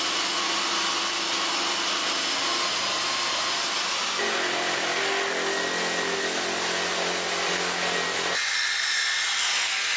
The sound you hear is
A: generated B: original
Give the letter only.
B